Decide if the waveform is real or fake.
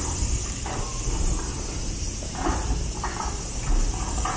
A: fake